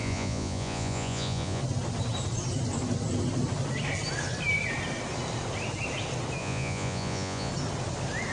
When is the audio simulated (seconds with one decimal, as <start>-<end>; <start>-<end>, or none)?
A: 0.0-1.6; 6.4-7.5